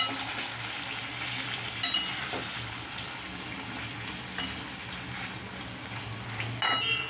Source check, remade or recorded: recorded